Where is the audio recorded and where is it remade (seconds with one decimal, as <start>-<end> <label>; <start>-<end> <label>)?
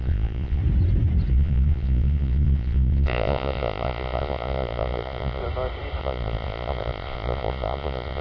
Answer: 0.0-0.6 remade; 0.6-1.3 recorded; 1.3-5.4 remade; 5.4-6.0 recorded; 6.0-8.2 remade